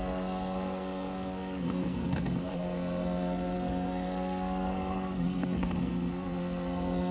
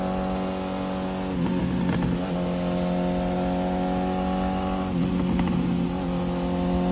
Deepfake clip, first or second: first